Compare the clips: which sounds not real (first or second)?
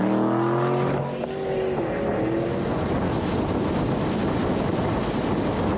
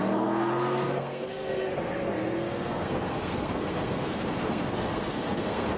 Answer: second